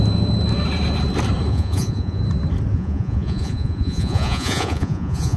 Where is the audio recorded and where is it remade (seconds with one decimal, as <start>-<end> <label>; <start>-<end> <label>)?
0.0-1.5 recorded; 1.5-2.2 remade; 2.2-2.7 recorded; 2.7-5.4 remade

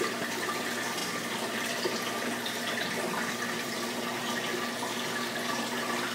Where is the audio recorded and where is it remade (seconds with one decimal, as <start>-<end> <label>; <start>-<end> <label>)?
0.0-6.1 recorded

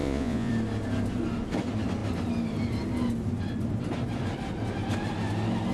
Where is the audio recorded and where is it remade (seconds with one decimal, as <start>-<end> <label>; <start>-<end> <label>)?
0.0-0.5 remade; 0.5-5.7 recorded

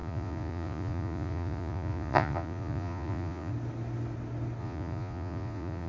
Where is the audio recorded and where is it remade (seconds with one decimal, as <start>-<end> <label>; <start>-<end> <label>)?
0.0-3.5 remade; 3.5-4.6 recorded; 4.6-5.9 remade

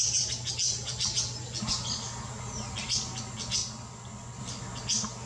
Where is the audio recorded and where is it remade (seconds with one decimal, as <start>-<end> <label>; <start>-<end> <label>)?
0.0-5.3 recorded

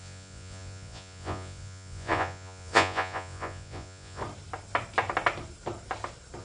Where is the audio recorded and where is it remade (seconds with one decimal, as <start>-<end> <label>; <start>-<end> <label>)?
0.0-4.2 remade; 4.2-6.4 recorded

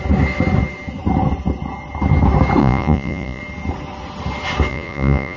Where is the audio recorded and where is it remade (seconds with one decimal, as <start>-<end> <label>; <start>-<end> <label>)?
0.0-2.6 recorded; 2.6-3.4 remade; 3.4-4.7 recorded; 4.7-5.4 remade